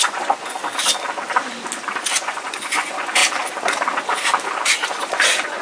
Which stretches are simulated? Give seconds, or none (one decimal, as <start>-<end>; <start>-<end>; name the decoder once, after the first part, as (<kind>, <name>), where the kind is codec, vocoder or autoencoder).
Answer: 0.0-0.6 (vocoder, Vocos); 2.1-3.2; 4.7-5.6